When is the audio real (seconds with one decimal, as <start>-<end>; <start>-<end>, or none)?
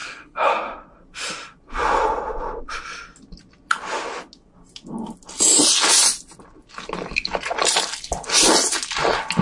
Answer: 0.5-9.4